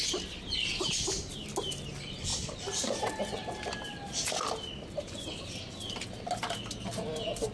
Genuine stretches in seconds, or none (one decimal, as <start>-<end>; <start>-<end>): 0.0-7.5